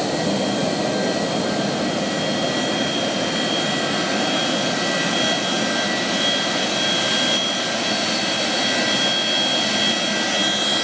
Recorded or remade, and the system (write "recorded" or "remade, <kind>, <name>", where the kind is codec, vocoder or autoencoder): recorded